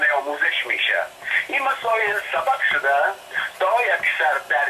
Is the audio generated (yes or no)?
no